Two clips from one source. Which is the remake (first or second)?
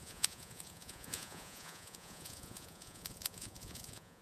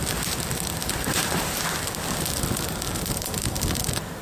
first